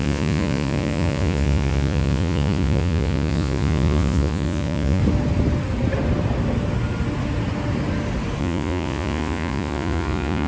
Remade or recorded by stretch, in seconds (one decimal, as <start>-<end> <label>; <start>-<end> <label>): 0.0-5.0 remade; 5.0-8.4 recorded; 8.4-10.5 remade